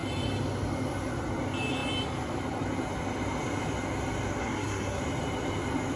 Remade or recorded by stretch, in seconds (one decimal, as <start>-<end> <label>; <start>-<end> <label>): 0.0-4.4 recorded; 4.4-5.0 remade; 5.0-6.0 recorded